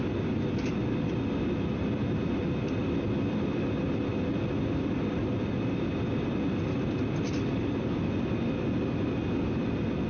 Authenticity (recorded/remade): recorded